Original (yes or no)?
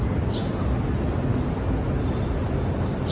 yes